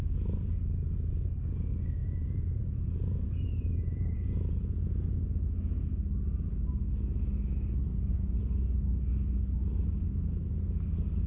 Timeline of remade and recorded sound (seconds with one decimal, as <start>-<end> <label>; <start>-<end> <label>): 0.0-2.0 recorded; 2.0-5.2 remade; 5.2-7.9 recorded; 7.9-8.4 remade; 8.4-11.3 recorded